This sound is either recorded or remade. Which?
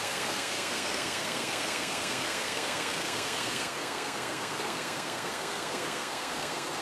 remade